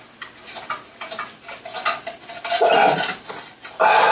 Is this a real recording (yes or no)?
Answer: yes